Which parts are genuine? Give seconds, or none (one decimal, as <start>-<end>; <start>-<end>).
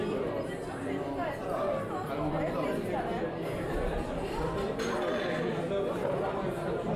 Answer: 0.0-7.0